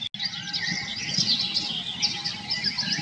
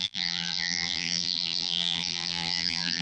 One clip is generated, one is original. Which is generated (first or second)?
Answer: second